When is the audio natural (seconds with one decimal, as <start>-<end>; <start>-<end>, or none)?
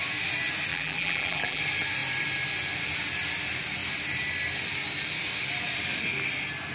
0.0-0.7; 1.6-6.7